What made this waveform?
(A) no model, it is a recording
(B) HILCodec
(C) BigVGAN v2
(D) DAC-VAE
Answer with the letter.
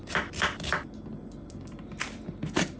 A